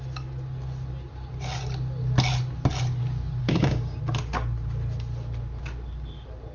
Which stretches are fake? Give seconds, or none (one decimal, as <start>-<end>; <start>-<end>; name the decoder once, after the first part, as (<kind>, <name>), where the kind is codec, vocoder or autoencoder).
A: 3.4-4.0 (codec, DAC)